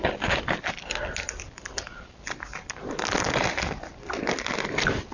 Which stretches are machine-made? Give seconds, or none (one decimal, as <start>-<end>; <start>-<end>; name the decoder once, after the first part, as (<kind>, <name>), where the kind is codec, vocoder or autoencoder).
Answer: none